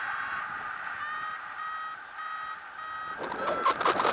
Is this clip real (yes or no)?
yes